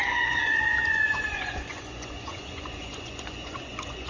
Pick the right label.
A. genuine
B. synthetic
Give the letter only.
B